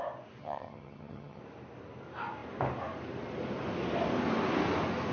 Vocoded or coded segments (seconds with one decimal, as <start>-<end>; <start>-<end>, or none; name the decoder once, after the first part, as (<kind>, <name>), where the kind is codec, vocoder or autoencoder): 0.4-1.4 (vocoder, HiFi-GAN)